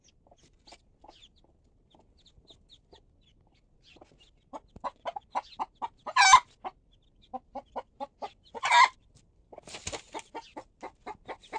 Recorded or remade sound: recorded